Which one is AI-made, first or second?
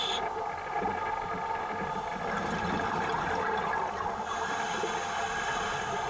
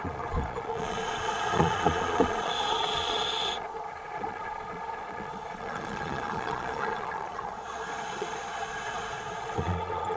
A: second